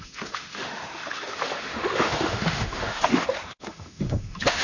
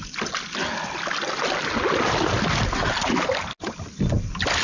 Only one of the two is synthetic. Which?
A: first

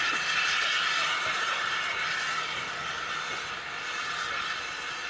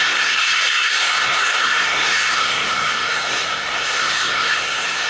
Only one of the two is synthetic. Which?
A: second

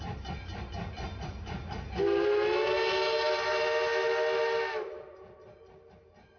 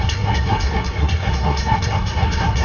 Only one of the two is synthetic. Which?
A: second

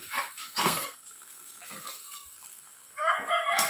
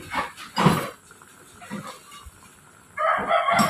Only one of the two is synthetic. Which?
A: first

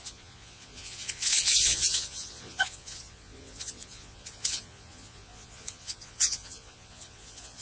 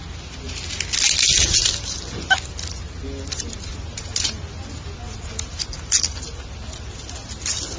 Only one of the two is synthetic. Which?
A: first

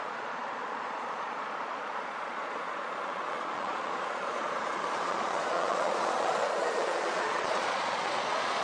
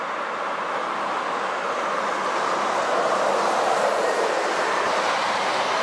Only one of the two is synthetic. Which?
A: first